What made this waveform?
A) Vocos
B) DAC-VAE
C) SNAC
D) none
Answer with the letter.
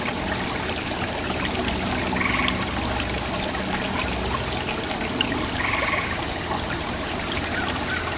D